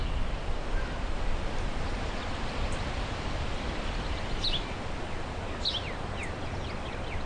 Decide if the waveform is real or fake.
real